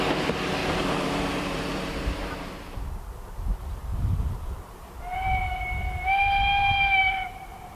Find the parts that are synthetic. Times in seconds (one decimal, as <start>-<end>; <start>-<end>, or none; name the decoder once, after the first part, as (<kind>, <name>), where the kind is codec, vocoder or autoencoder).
0.6-2.5 (vocoder, BigVGAN v2); 3.9-5.4; 7.0-7.8